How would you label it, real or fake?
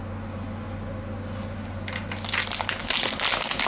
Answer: real